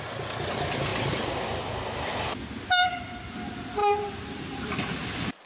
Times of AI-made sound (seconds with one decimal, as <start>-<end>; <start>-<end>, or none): 3.8-4.9